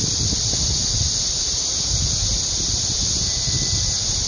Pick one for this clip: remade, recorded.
recorded